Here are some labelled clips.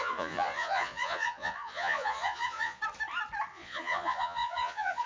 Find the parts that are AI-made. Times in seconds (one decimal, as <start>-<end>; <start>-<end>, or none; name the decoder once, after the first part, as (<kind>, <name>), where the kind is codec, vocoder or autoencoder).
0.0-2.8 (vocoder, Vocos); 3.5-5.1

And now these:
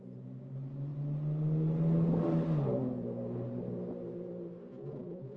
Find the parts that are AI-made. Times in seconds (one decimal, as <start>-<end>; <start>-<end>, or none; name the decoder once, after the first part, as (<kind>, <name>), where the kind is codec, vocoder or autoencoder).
4.7-5.4 (vocoder, Vocos)

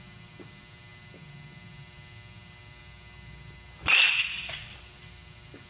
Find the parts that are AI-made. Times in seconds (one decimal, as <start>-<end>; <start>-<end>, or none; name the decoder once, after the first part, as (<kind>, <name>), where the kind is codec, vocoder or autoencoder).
none